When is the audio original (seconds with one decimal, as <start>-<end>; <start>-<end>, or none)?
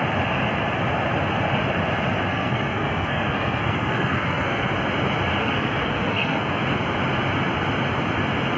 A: 0.0-2.3; 4.7-5.4; 6.6-8.6